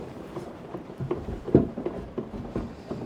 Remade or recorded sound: remade